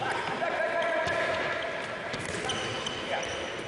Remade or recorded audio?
recorded